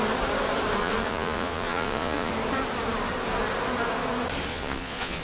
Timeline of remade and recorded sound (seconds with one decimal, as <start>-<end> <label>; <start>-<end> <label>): 0.0-0.8 recorded; 0.8-2.3 remade; 2.3-4.5 recorded; 4.5-5.2 remade